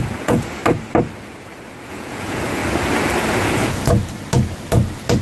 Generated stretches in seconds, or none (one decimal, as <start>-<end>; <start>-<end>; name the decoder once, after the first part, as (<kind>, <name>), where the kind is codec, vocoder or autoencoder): 0.0-0.6 (vocoder, Vocos); 1.9-2.6; 3.3-4.0

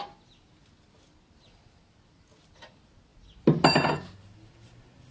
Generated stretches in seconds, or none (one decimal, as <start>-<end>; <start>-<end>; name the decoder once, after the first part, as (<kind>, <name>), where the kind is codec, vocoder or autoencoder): none

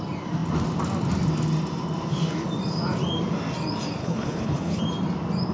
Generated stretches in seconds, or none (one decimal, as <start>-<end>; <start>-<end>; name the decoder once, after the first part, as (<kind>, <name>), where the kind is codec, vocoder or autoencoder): 4.0-4.8 (codec, HILCodec)

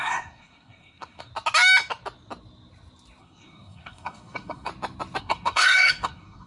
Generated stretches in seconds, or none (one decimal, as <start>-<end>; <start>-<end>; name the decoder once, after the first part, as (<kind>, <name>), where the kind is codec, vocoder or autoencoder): 0.0-1.3 (codec, SNAC); 3.2-4.7; 5.2-6.5

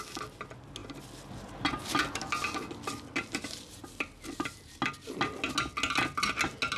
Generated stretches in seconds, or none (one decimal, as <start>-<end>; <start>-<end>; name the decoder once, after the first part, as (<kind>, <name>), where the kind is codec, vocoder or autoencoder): none

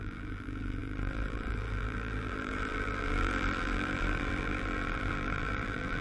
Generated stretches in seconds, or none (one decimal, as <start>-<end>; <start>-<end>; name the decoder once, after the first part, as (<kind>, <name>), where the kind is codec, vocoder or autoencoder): 0.0-6.0 (vocoder, BigVGAN v2)